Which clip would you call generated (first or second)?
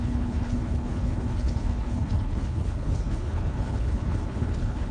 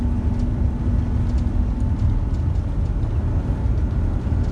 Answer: first